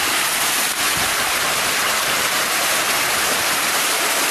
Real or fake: fake